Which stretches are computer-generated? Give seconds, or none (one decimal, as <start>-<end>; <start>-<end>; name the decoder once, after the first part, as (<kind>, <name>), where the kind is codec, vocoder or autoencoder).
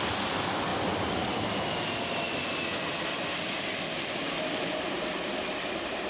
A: 0.7-4.4 (vocoder, BigVGAN v2)